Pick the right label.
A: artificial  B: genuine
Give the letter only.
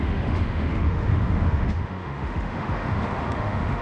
A